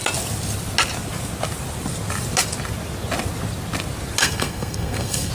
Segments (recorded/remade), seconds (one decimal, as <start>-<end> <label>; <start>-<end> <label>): 0.0-4.2 recorded; 4.2-5.3 remade

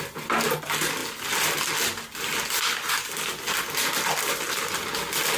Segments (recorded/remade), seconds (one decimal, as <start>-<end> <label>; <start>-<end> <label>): 0.0-5.4 recorded

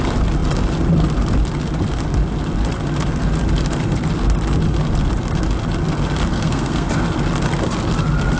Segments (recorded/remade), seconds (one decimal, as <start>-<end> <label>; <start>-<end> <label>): 0.0-6.3 recorded; 6.3-6.9 remade; 6.9-8.4 recorded